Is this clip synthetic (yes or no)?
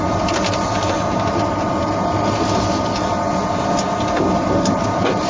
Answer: no